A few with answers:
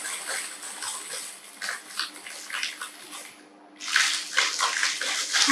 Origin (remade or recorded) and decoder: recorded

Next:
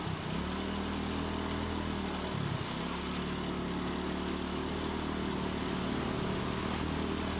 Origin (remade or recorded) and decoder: recorded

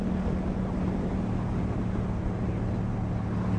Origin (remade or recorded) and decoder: recorded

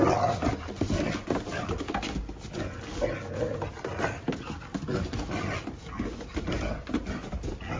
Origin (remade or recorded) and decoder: recorded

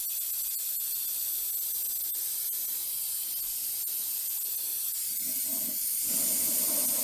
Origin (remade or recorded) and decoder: recorded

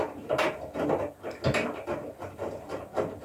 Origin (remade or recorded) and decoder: recorded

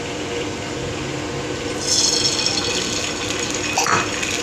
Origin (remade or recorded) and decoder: recorded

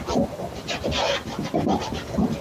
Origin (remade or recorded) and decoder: recorded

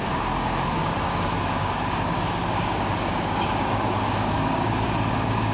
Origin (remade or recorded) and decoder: remade, codec, DAC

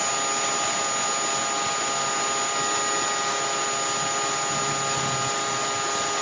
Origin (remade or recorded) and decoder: recorded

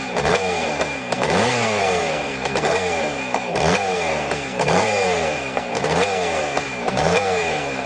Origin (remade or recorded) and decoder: remade, codec, SNAC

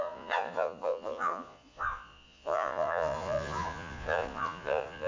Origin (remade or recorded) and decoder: remade, vocoder, Vocos